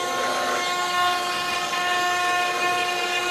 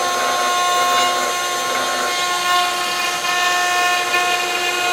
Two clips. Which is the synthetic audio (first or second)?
first